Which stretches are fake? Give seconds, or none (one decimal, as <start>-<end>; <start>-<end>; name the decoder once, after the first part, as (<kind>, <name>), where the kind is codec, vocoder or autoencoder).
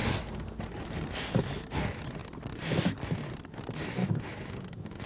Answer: 4.0-5.1 (autoencoder, DAC-VAE)